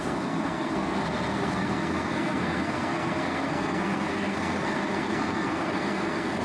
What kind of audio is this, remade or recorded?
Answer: remade